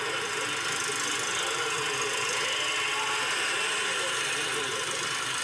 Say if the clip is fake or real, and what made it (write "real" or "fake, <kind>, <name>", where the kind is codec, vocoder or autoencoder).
real